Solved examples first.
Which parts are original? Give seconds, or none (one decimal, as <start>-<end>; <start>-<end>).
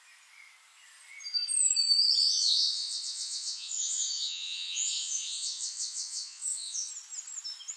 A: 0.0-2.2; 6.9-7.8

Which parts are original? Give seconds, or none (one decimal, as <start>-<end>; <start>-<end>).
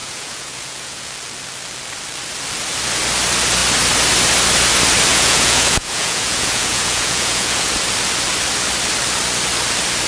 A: 1.1-5.1; 7.7-10.1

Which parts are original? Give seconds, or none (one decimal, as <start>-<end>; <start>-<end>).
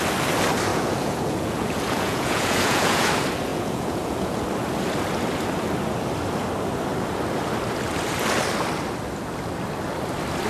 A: 0.0-0.7; 3.1-3.5; 4.4-10.5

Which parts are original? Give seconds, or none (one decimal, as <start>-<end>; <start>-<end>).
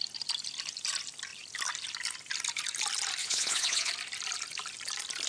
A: 0.0-3.2; 3.9-5.3